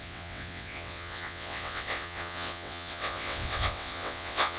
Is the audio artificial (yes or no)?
yes